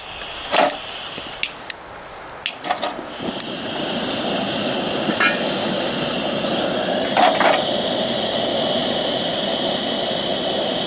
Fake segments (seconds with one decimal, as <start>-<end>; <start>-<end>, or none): 8.8-9.8